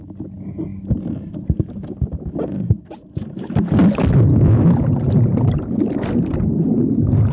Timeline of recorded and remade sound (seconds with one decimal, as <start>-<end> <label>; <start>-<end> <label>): 0.0-4.3 recorded; 4.3-4.8 remade; 4.8-7.3 recorded

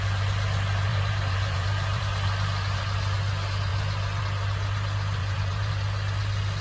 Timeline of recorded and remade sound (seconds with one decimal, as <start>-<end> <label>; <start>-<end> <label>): 0.0-0.9 recorded; 0.9-2.0 remade; 2.0-5.2 recorded; 5.2-5.7 remade; 5.7-6.6 recorded